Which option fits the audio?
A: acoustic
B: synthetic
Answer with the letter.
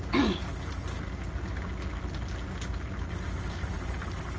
A